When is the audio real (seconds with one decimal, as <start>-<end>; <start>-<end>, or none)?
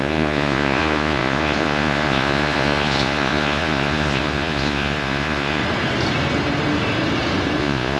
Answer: 5.6-7.6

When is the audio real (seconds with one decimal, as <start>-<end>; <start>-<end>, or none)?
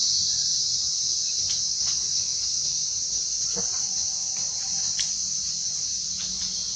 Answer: 0.5-1.4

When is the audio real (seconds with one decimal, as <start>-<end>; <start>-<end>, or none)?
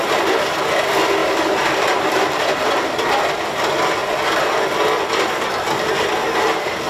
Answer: 0.0-1.2; 2.9-6.9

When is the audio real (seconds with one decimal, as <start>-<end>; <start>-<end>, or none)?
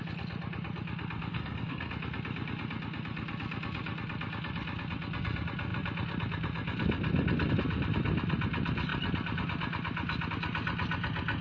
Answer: 0.0-1.3; 1.9-11.4